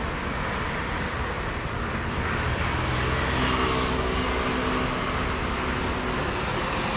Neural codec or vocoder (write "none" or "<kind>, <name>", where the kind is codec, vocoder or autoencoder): none